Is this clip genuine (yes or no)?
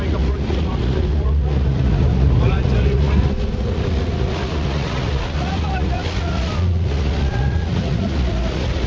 no